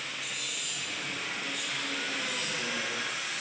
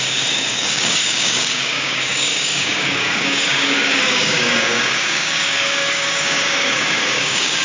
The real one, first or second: first